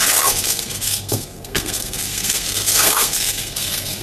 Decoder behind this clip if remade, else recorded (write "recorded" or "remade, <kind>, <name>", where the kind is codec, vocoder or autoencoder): remade, codec, SNAC